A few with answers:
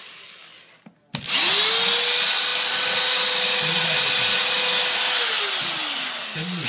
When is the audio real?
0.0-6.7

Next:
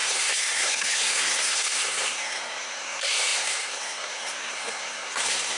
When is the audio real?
none

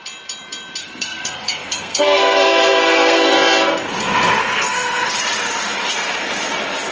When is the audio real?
0.0-0.8; 3.3-4.4; 5.1-6.9